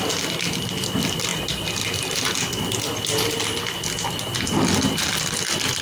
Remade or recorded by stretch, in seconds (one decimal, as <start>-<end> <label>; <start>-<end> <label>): 0.0-5.8 recorded